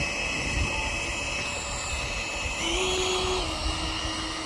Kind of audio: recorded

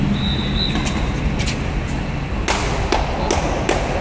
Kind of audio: recorded